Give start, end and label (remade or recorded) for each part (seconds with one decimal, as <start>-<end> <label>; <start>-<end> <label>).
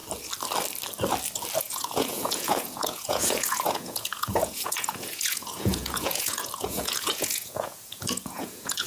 0.0-1.6 recorded; 1.6-8.9 remade